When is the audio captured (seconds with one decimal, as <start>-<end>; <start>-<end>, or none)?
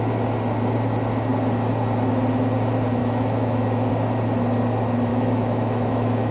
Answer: 0.0-3.0; 3.9-5.1